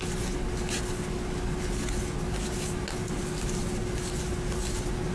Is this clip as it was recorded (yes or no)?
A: yes